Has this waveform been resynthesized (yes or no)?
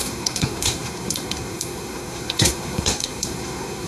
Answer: yes